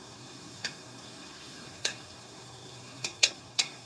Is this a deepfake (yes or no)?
yes